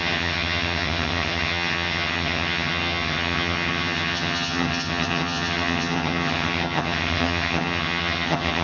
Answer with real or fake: fake